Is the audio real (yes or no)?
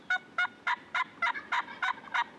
yes